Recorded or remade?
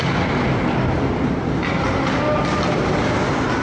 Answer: recorded